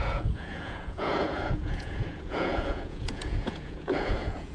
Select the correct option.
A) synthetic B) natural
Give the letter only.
A